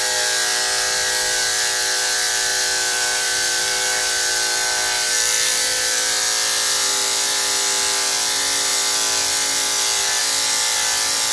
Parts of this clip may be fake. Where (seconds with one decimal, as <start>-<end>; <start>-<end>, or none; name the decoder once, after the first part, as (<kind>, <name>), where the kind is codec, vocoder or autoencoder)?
2.5-4.3 (vocoder, BigVGAN v2)